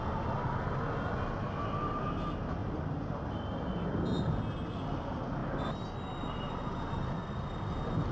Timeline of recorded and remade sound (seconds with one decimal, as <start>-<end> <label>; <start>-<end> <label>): 0.0-8.1 recorded